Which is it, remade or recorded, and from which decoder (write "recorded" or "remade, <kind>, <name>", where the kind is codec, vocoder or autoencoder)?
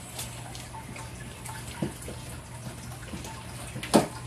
recorded